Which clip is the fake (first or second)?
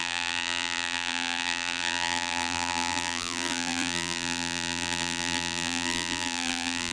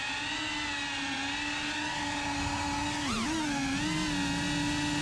first